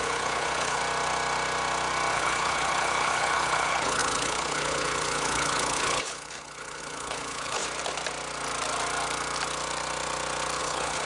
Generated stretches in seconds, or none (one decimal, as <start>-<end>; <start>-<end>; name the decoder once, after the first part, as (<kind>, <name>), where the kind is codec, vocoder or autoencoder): 0.0-0.8 (codec, HILCodec); 2.1-7.6; 10.6-11.1

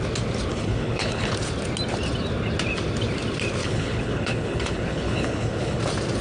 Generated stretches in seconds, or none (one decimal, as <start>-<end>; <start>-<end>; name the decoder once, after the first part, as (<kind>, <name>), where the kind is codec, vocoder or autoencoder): 0.5-1.3 (codec, HILCodec); 3.6-5.8

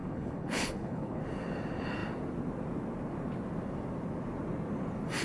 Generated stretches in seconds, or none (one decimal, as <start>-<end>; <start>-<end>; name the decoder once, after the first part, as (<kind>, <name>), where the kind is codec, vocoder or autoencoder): 0.0-1.2 (codec, HILCodec)

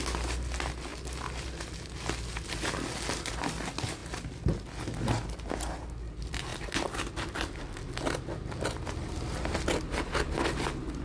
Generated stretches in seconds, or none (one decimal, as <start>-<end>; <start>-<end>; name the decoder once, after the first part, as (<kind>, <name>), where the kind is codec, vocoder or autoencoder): none

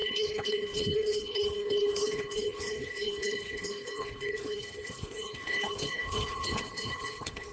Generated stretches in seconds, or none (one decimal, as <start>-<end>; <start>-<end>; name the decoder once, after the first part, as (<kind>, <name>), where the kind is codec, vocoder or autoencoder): 0.0-7.5 (codec, HILCodec)

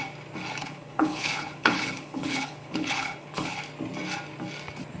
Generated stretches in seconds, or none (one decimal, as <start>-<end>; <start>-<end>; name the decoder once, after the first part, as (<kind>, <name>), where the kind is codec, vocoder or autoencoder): 0.6-3.6 (codec, HILCodec)

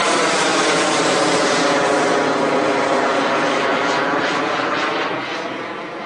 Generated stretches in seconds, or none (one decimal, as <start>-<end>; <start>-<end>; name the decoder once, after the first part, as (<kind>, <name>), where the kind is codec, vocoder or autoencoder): none

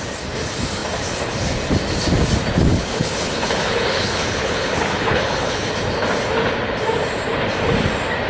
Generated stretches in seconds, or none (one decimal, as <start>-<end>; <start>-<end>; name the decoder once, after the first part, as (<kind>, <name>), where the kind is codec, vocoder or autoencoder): 2.7-5.7 (codec, HILCodec)